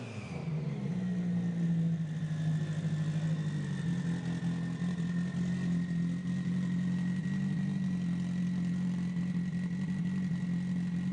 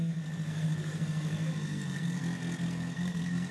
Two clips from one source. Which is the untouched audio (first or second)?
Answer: first